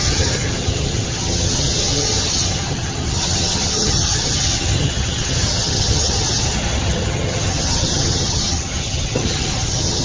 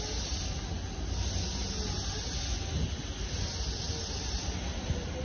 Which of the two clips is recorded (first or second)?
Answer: second